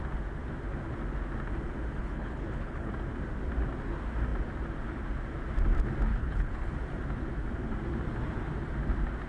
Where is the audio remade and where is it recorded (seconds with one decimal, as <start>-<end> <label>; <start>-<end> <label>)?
0.0-2.0 recorded; 2.0-2.9 remade; 2.9-6.1 recorded; 6.1-6.7 remade; 6.7-9.3 recorded